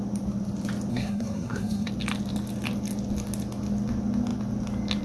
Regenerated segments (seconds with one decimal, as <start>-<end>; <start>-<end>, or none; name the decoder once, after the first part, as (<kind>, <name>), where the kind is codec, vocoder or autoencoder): 0.9-1.9 (codec, SNAC)